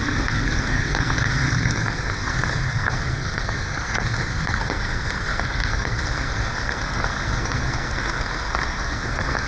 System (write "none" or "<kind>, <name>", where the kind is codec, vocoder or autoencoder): codec, SNAC